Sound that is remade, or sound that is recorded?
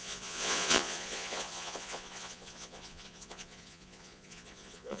remade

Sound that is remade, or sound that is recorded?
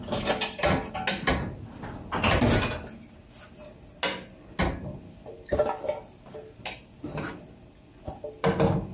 recorded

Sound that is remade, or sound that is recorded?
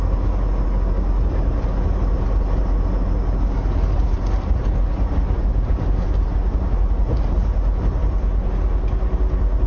recorded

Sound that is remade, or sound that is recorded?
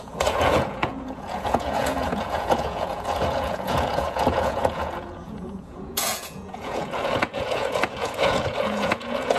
remade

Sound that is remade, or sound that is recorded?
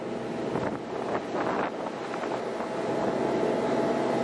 recorded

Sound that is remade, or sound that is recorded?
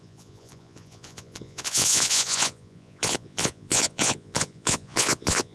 remade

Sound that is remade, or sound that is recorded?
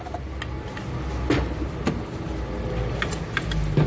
recorded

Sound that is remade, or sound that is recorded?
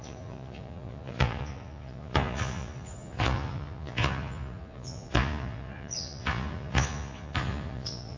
remade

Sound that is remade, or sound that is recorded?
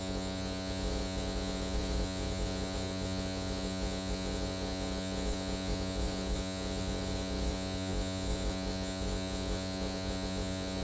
remade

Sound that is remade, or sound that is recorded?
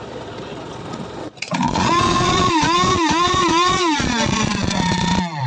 remade